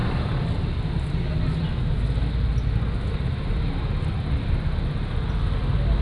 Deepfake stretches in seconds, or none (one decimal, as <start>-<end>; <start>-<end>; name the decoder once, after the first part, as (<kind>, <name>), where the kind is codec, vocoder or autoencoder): 3.3-4.3 (vocoder, BigVGAN v2)